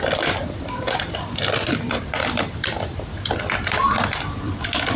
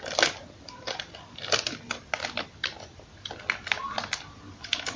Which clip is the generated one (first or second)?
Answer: first